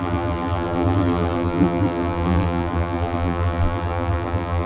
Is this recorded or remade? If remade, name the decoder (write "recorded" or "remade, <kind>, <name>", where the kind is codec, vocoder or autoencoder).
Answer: remade, vocoder, BigVGAN v2